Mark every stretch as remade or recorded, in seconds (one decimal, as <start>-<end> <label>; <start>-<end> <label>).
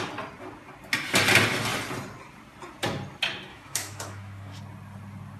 0.0-3.5 recorded; 3.5-4.6 remade; 4.6-5.4 recorded